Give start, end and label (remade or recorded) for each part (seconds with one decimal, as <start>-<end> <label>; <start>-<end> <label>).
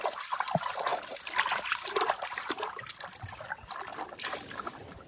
0.0-5.1 recorded